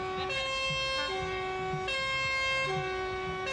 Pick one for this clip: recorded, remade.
recorded